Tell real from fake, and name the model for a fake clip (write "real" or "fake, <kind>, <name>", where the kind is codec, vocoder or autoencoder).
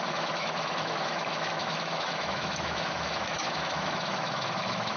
fake, autoencoder, DAC-VAE